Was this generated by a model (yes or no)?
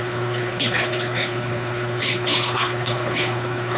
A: yes